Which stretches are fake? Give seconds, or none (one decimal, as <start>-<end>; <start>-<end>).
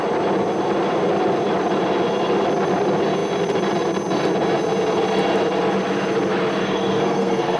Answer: 6.6-7.6